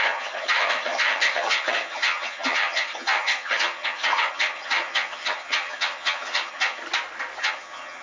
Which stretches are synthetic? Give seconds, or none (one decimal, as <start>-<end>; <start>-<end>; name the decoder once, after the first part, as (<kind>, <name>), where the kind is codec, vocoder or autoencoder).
0.0-6.8 (vocoder, HiFi-GAN); 7.4-8.0